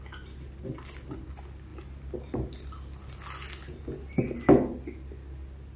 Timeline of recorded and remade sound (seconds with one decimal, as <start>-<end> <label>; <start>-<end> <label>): 0.0-5.8 recorded